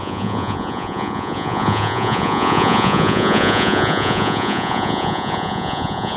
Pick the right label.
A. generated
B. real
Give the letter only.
A